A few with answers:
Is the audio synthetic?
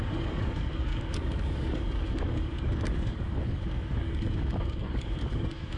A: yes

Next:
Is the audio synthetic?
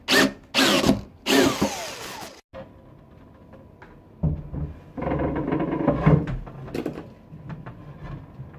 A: no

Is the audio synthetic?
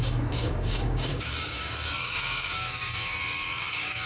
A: yes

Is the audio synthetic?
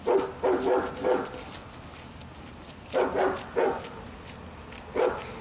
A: no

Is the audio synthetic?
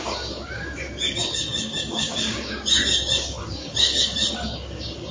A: yes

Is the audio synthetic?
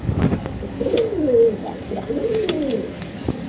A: yes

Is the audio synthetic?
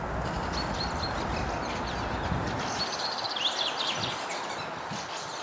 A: no